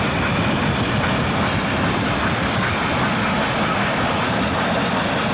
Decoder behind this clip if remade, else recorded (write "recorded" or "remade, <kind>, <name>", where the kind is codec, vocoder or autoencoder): recorded